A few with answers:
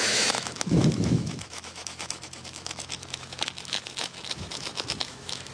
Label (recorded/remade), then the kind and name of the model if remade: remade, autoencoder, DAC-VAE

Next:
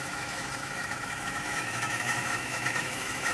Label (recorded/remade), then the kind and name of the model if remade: remade, autoencoder, DAC-VAE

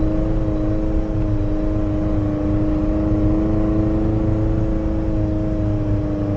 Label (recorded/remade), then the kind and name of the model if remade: recorded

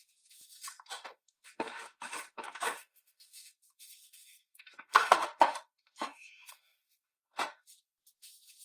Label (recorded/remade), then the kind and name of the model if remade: remade, autoencoder, DAC-VAE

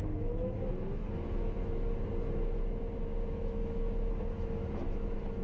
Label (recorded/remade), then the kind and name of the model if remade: remade, autoencoder, DAC-VAE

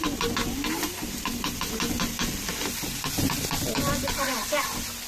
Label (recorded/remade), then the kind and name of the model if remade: recorded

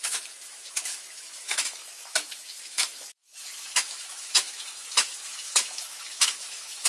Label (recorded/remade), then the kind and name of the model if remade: remade, autoencoder, DAC-VAE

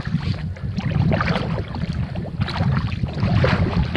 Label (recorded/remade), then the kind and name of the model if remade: recorded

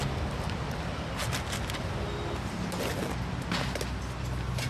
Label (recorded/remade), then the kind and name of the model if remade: recorded